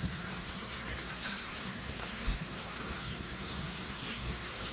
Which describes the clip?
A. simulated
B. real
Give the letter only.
A